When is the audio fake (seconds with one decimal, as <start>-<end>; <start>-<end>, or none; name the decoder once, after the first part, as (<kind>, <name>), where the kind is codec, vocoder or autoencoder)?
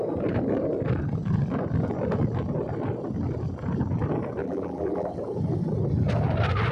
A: 4.4-5.1 (vocoder, BigVGAN v2)